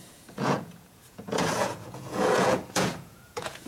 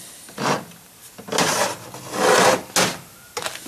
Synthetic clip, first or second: first